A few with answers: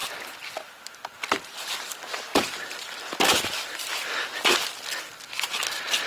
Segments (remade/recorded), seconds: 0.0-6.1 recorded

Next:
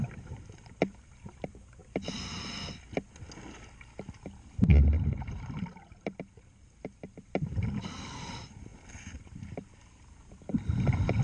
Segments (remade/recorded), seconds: 0.0-1.8 remade; 1.8-4.6 recorded; 4.6-8.7 remade; 8.7-9.5 recorded; 9.5-11.2 remade